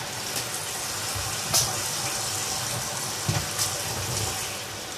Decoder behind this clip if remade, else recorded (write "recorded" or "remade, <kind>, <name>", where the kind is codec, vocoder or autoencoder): recorded